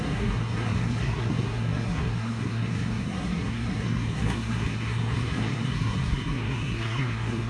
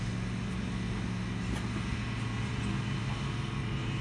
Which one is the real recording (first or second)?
second